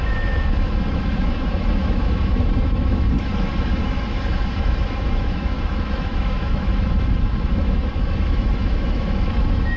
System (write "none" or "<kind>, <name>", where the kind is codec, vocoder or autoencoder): autoencoder, DAC-VAE